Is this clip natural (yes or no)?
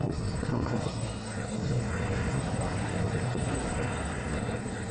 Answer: no